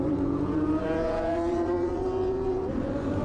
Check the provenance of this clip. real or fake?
fake